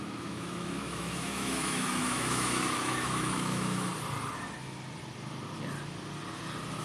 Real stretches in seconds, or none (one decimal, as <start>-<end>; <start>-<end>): 3.9-6.8